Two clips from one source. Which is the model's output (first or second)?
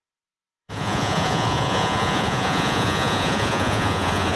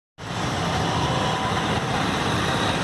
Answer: first